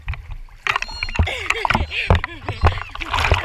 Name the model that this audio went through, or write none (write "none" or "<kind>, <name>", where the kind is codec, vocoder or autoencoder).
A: none